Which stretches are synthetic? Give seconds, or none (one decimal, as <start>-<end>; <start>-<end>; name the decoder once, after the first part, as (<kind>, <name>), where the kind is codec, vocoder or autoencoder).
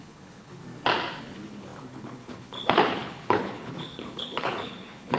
0.0-0.6 (codec, HILCodec); 1.2-5.2